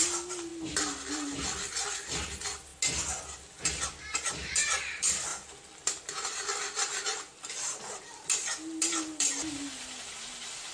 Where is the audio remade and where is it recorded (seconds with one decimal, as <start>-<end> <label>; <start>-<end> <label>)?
0.0-10.7 recorded